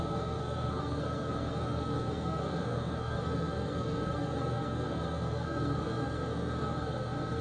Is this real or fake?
fake